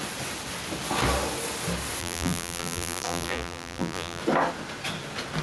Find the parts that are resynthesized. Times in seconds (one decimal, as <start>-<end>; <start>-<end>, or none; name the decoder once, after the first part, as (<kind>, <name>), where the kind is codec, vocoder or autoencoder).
2.0-4.2 (vocoder, BigVGAN v2)